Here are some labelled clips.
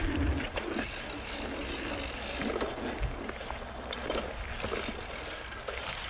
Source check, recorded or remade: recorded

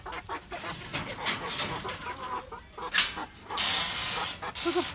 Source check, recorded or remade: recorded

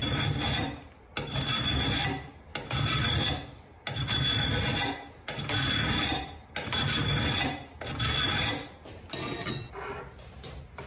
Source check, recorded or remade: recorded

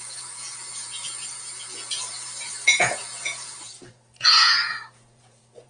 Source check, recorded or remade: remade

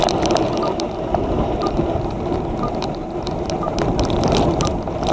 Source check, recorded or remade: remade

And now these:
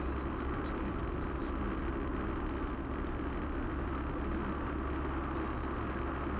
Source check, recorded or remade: recorded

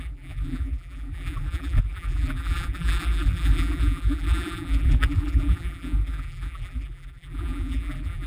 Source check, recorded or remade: remade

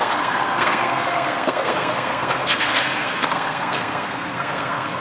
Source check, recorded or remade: remade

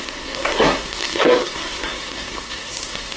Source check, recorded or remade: remade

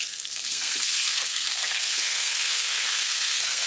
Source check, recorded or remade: remade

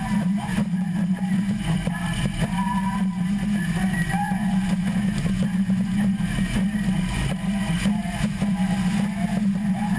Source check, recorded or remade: remade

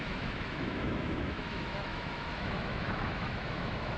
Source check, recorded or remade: remade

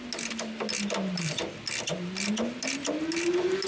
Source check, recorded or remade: recorded